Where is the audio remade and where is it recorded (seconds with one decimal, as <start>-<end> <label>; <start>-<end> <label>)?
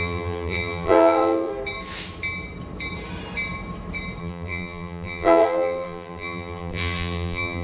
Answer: 0.0-1.5 remade; 1.5-4.2 recorded; 4.2-7.6 remade